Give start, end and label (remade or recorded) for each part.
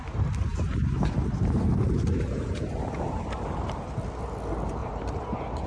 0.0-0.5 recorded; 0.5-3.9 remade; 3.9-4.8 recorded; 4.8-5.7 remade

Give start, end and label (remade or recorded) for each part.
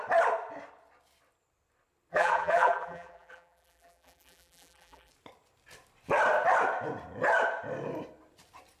0.0-2.1 recorded; 2.1-5.1 remade; 5.1-8.8 recorded